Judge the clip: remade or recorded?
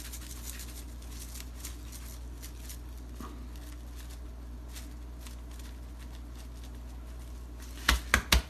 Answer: recorded